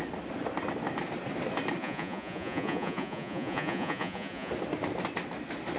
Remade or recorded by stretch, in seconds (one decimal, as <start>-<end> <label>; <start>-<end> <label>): 0.0-1.8 recorded; 1.8-4.5 remade; 4.5-5.8 recorded